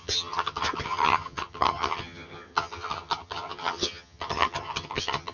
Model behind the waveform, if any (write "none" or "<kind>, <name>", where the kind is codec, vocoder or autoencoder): vocoder, HiFi-GAN